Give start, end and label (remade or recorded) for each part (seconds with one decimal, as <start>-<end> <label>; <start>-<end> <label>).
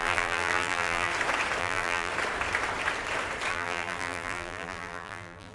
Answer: 0.0-1.1 remade; 1.1-1.6 recorded; 1.6-2.1 remade; 2.1-3.5 recorded; 3.5-5.5 remade